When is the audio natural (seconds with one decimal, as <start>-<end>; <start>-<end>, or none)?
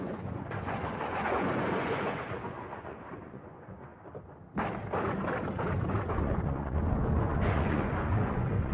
3.9-6.1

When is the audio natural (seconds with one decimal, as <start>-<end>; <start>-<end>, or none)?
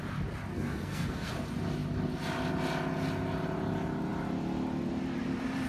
0.0-0.5; 1.3-5.7